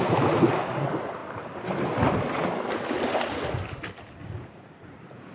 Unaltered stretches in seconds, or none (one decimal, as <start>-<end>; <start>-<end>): 0.0-4.2